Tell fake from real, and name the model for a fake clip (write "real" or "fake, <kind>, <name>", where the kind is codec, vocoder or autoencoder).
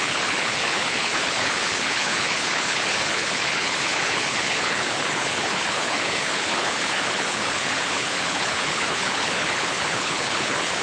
fake, codec, HILCodec